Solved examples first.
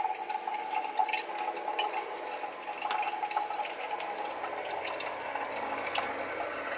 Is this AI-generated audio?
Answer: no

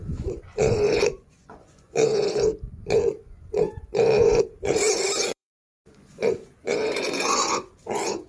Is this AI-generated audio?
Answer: yes